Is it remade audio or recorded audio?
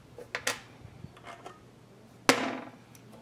recorded